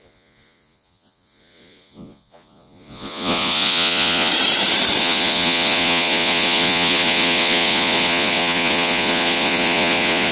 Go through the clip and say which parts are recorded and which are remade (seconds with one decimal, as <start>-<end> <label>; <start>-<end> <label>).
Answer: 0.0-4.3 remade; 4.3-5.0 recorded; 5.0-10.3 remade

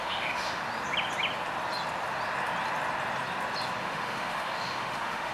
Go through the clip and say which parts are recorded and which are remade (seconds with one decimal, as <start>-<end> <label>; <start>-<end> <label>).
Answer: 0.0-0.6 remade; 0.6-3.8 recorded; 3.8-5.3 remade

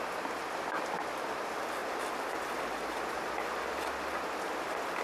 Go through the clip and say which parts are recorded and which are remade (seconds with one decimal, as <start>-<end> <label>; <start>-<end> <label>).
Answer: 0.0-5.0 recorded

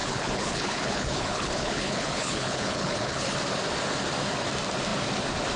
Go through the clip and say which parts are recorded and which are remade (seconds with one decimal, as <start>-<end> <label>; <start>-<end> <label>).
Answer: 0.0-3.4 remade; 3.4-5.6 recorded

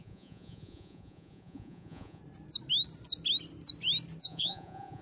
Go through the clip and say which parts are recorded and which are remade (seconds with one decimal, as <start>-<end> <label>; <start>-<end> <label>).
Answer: 0.0-2.2 remade; 2.2-4.2 recorded; 4.2-5.0 remade

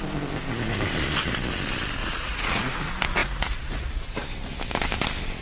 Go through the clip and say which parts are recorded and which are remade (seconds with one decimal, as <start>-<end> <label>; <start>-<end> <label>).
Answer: 0.0-2.0 recorded; 2.0-2.6 remade; 2.6-3.2 recorded; 3.2-4.0 remade; 4.0-5.4 recorded

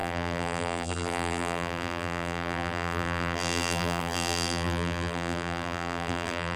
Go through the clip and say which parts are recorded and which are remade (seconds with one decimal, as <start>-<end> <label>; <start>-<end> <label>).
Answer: 0.0-6.6 remade

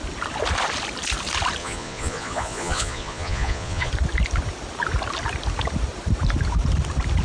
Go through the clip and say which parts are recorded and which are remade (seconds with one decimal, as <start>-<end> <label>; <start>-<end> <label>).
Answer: 0.0-1.6 recorded; 1.6-3.9 remade; 3.9-7.2 recorded